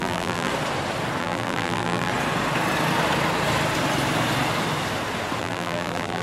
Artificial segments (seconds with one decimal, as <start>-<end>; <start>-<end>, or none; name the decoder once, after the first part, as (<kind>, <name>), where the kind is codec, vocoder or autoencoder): 0.0-0.5 (vocoder, BigVGAN v2); 1.2-2.1; 5.4-6.2